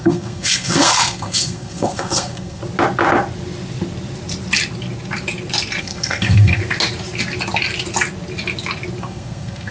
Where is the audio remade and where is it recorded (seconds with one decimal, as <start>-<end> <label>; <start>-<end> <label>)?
0.0-2.6 remade; 2.6-5.8 recorded; 5.8-6.6 remade; 6.6-9.0 recorded; 9.0-9.7 remade